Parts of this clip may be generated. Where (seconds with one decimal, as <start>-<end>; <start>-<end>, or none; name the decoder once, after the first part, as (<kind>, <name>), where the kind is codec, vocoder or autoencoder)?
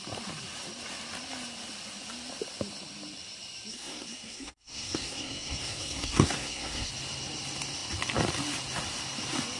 3.7-6.9 (codec, SNAC)